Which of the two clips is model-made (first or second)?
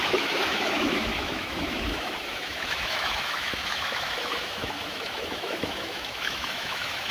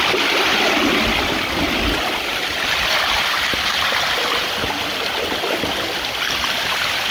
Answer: first